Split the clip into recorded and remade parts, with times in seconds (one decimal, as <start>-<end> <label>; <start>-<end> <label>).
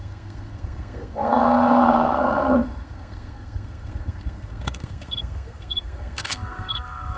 0.0-7.2 remade